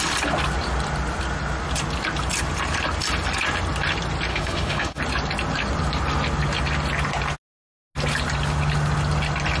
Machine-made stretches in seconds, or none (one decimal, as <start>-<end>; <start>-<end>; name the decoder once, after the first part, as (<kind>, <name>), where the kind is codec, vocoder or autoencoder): 4.3-5.0 (autoencoder, DAC-VAE)